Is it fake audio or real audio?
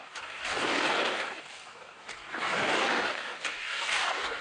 fake